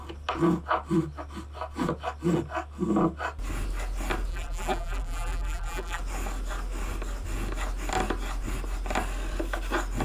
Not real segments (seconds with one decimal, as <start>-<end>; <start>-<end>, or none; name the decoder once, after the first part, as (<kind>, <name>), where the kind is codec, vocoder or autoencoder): 4.3-6.0 (vocoder, BigVGAN v2)